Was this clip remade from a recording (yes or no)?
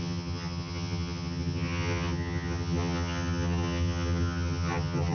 yes